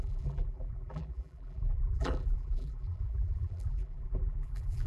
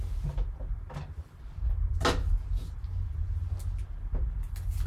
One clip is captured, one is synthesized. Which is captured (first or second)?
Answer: second